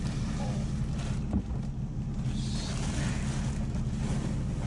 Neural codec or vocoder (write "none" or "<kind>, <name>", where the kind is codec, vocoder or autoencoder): none